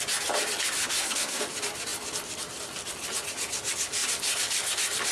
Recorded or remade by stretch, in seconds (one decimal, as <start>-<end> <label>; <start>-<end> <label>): 0.0-0.8 recorded; 0.8-1.4 remade; 1.4-5.1 recorded